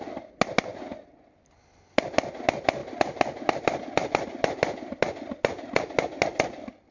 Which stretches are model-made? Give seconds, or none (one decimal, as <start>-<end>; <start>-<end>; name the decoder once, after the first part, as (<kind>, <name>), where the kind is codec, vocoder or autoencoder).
none